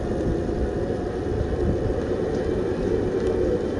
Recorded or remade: remade